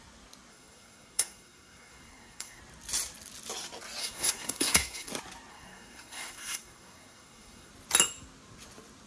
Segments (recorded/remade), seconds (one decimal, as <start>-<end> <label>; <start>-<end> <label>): 0.0-0.5 recorded; 0.5-2.6 remade; 2.6-4.0 recorded; 4.0-5.1 remade; 5.1-5.5 recorded; 5.5-7.7 remade; 7.7-9.1 recorded